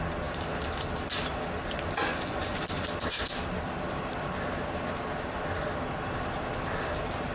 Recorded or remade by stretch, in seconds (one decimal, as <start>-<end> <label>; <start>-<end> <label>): 0.0-2.1 recorded; 2.1-2.6 remade; 2.6-7.3 recorded

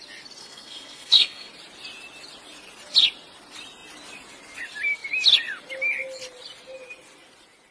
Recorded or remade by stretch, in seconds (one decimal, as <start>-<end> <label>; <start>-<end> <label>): 0.0-0.4 recorded; 0.4-1.5 remade; 1.5-7.7 recorded

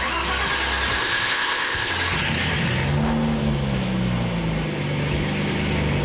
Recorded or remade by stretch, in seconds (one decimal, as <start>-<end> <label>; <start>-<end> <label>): 0.0-1.0 recorded; 1.0-1.9 remade; 1.9-6.0 recorded

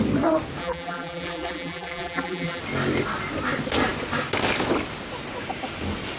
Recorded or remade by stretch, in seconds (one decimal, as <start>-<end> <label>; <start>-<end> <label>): 0.0-0.6 recorded; 0.6-2.6 remade; 2.6-6.2 recorded

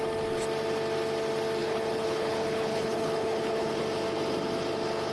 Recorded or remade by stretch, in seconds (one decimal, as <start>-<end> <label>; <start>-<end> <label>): 0.0-1.6 recorded; 1.6-3.8 remade; 3.8-5.1 recorded

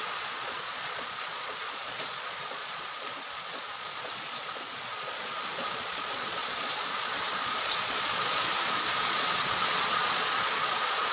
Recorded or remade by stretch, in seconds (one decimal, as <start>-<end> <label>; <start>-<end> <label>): 0.0-11.1 remade

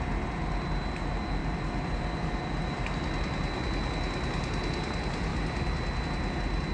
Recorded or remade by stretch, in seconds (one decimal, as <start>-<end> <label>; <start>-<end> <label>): 0.0-1.4 recorded; 1.4-2.9 remade; 2.9-6.7 recorded

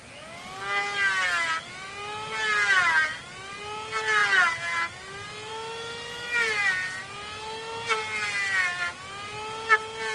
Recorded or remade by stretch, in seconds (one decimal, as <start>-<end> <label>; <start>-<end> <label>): 0.0-10.1 recorded